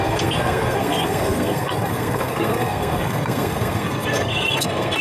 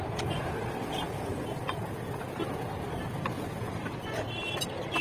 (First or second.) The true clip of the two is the second